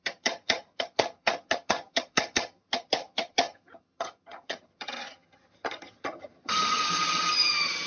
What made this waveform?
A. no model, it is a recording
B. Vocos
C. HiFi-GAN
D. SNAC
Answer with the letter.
C